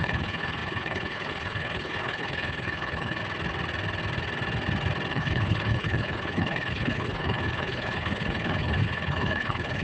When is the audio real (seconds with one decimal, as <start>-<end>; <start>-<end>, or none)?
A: 3.2-5.1